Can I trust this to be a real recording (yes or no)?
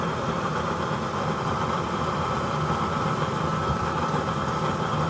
yes